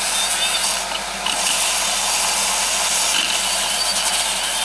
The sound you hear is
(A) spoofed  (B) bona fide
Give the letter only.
B